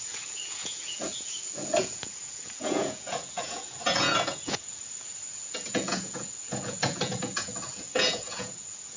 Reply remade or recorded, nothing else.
remade